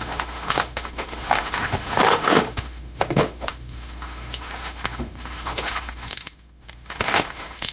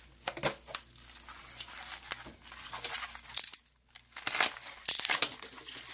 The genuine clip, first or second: second